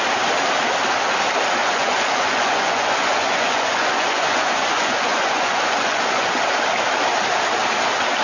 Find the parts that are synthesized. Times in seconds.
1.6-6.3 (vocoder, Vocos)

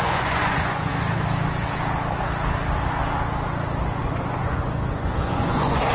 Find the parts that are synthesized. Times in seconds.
0.0-0.9 (vocoder, Vocos); 4.0-5.9

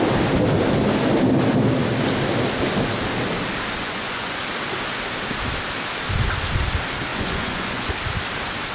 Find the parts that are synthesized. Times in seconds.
3.8-4.4 (vocoder, Vocos); 7.1-7.9

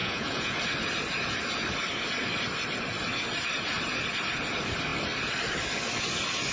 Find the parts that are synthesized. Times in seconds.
0.0-0.6 (vocoder, Vocos)

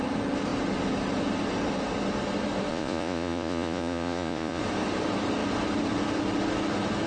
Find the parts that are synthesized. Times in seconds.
2.7-4.6 (vocoder, Vocos)

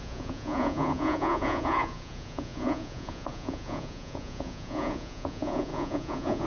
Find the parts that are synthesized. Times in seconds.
0.0-6.5 (vocoder, Vocos)

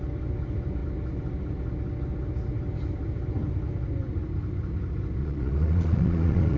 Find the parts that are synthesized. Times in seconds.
5.2-6.6 (vocoder, Vocos)